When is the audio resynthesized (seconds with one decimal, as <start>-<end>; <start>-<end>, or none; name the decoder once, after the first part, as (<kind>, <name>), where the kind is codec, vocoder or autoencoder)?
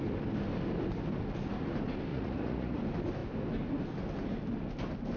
2.1-2.8 (vocoder, Vocos)